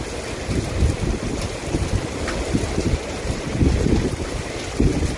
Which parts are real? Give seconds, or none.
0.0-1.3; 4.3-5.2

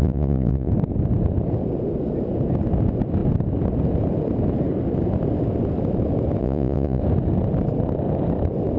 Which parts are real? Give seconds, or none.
0.7-6.4; 7.0-8.8